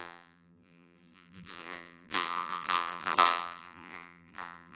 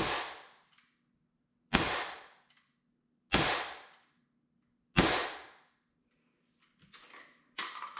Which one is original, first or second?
second